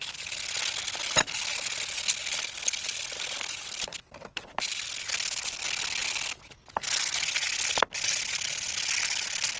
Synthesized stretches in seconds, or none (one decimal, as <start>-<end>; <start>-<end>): 2.2-4.7

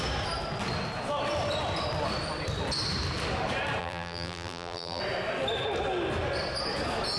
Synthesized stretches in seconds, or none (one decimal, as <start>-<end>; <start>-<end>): 3.8-5.0

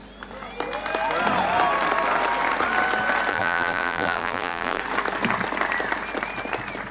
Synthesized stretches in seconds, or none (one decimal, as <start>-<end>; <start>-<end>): 3.3-4.8

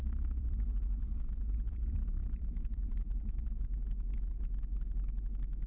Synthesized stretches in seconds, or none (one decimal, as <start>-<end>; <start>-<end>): 0.0-3.4

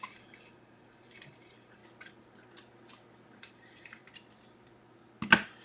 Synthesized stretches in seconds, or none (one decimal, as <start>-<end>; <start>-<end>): 0.0-1.8; 3.4-4.0

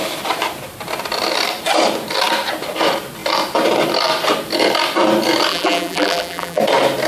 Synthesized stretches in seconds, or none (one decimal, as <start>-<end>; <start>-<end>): 5.5-6.6